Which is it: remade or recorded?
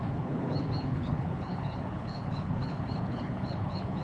remade